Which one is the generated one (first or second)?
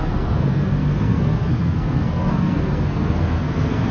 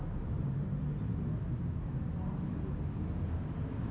first